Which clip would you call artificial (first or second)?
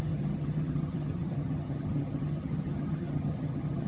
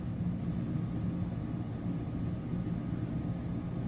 first